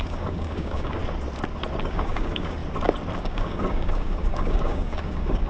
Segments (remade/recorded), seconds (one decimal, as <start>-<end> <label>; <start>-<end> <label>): 0.0-1.0 remade; 1.0-1.8 recorded; 1.8-2.6 remade; 2.6-3.2 recorded; 3.2-5.5 remade